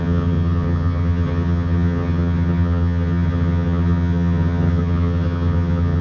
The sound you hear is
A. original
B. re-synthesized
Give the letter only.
B